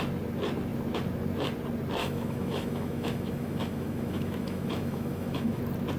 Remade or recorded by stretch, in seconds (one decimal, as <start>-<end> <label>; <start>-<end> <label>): 0.0-2.0 recorded; 2.0-5.6 remade; 5.6-6.0 recorded

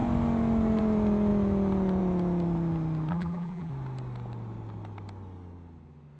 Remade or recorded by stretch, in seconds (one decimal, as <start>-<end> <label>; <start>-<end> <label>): 0.0-3.1 recorded; 3.1-3.7 remade; 3.7-6.2 recorded

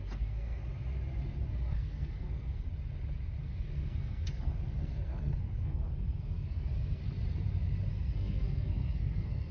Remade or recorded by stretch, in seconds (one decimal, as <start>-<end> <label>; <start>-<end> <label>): 0.0-0.6 remade; 0.6-1.7 recorded; 1.7-2.7 remade; 2.7-3.4 recorded; 3.4-7.0 remade; 7.0-7.9 recorded; 7.9-9.5 remade

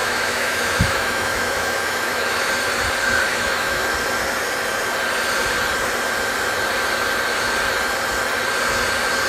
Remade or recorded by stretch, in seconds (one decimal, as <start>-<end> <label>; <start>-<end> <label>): 0.0-2.5 remade; 2.5-3.3 recorded; 3.3-3.8 remade; 3.8-9.3 recorded

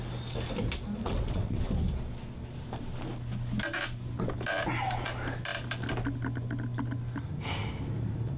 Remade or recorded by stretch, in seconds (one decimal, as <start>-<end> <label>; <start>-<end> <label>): 0.0-1.0 recorded; 1.0-1.7 remade; 1.7-8.4 recorded

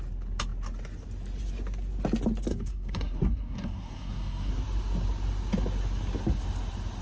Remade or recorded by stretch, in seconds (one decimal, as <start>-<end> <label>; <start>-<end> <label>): 0.0-2.5 recorded; 2.5-4.5 remade; 4.5-7.0 recorded

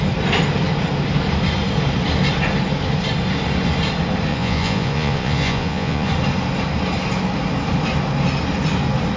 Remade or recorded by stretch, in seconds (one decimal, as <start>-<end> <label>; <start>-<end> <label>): 0.0-4.3 recorded; 4.3-6.1 remade; 6.1-9.2 recorded

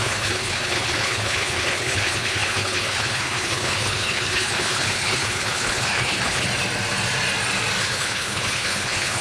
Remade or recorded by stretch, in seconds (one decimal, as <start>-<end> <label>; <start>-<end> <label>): 0.0-6.5 remade; 6.5-7.8 recorded; 7.8-9.2 remade